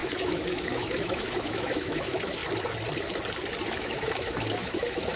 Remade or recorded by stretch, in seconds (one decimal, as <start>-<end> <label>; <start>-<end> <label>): 0.0-2.4 remade; 2.4-3.8 recorded; 3.8-5.2 remade